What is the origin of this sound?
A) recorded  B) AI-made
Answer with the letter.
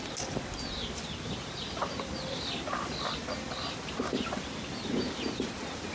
A